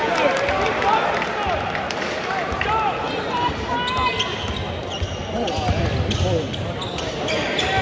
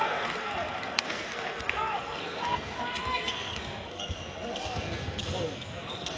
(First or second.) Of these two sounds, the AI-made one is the second